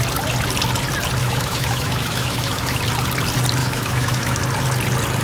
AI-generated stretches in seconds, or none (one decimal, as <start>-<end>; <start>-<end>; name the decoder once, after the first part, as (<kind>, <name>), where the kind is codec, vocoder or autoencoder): 1.2-2.8 (autoencoder, DAC-VAE); 3.6-4.4